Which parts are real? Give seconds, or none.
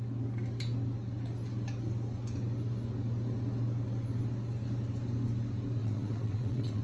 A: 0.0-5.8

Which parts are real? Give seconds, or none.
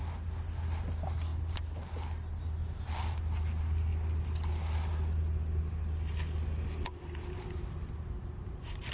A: 0.0-8.9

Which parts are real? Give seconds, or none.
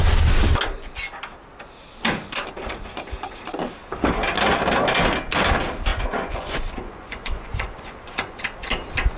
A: 0.0-5.9; 8.4-9.2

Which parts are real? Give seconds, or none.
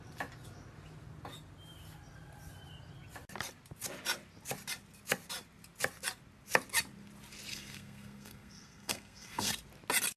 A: 0.0-7.5; 9.5-10.2